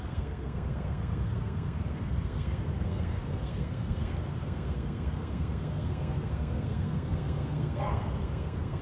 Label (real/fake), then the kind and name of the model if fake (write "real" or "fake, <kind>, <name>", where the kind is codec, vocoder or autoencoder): fake, codec, SNAC